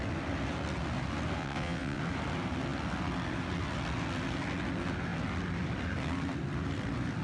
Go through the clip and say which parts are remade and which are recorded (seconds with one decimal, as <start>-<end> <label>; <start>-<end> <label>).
0.0-1.4 recorded; 1.4-2.0 remade; 2.0-7.2 recorded